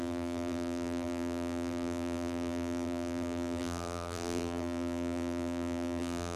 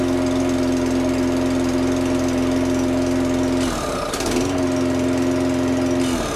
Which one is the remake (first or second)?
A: first